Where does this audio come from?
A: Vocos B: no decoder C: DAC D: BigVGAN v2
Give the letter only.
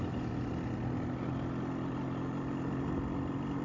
B